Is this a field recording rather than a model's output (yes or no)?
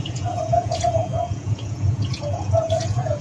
no